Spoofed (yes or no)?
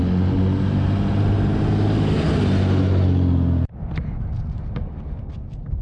no